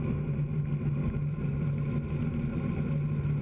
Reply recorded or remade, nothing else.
recorded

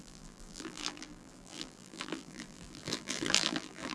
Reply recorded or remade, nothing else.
remade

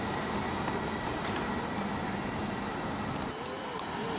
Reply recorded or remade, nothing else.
recorded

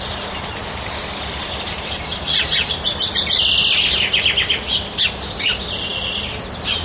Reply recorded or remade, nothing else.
remade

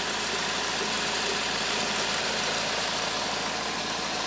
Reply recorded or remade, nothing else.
recorded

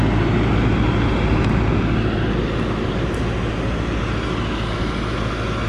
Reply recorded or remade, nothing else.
recorded